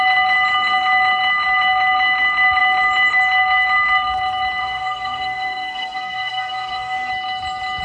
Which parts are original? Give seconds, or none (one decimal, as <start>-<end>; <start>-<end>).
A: 0.0-4.6; 7.1-7.8